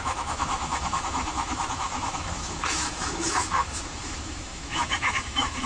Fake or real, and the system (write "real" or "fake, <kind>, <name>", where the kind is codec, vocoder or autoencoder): fake, autoencoder, DAC-VAE